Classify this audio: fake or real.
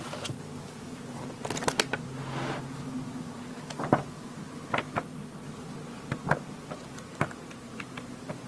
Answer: real